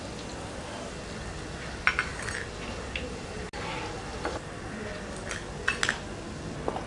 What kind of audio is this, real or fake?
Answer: real